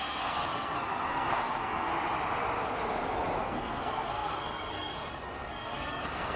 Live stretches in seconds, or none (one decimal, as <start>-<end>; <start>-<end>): 1.9-3.4